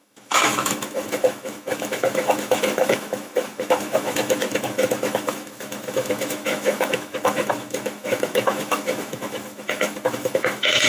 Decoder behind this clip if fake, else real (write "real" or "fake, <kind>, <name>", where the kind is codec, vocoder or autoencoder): fake, autoencoder, DAC-VAE